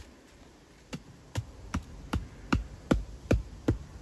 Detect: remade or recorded remade